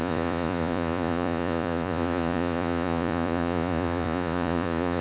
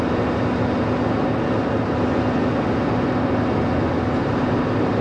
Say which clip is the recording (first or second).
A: second